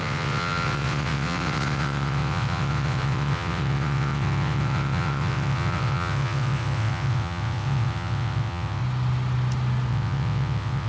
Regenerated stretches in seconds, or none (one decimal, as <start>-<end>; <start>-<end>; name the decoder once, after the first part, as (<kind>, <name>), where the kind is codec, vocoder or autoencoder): 0.0-8.8 (vocoder, WaveNeXt); 9.9-10.9